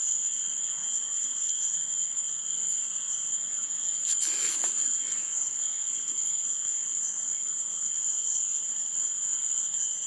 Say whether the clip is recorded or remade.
remade